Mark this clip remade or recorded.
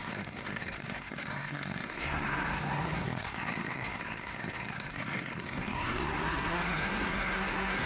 remade